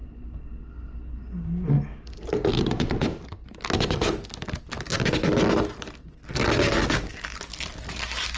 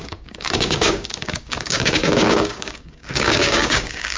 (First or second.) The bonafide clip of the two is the first